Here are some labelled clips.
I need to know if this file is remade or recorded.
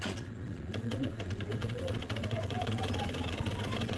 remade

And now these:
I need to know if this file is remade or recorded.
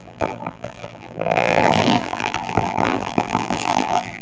remade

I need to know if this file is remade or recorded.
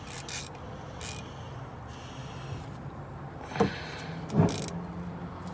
recorded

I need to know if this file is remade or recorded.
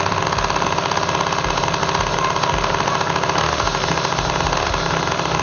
recorded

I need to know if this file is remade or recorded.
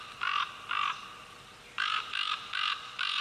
remade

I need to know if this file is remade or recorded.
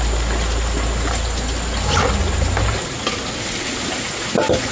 recorded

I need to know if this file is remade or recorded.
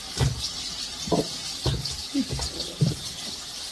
recorded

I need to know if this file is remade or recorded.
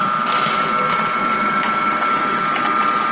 recorded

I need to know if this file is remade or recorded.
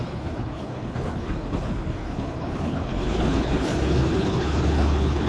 remade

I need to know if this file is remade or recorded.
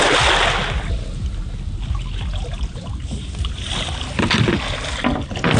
recorded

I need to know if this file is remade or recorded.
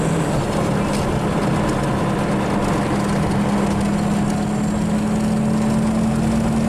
recorded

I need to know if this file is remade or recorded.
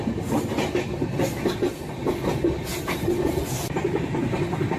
recorded